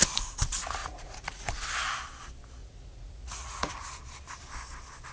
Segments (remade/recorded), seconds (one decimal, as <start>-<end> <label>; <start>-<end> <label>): 0.0-0.8 recorded; 0.8-1.5 remade; 1.5-2.6 recorded; 2.6-3.7 remade; 3.7-5.1 recorded